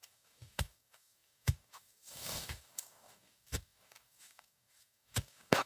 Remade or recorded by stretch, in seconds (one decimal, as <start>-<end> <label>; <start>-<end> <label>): 0.0-5.7 remade